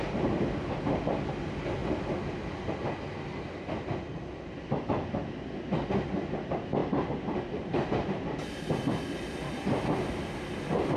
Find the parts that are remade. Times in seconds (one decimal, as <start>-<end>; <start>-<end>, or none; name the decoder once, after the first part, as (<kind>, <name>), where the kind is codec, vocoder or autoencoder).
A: 6.8-8.6 (vocoder, BigVGAN v2)